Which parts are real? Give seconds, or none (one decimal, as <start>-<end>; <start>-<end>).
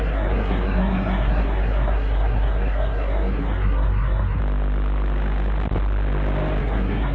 4.4-6.6